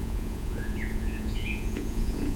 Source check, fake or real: fake